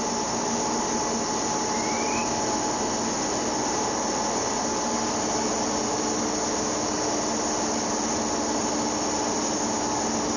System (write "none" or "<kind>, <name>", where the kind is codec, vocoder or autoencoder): none